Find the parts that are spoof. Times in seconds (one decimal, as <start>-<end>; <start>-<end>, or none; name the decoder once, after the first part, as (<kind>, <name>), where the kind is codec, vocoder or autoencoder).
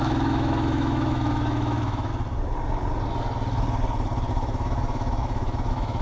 0.0-2.1 (autoencoder, DAC-VAE); 4.3-6.0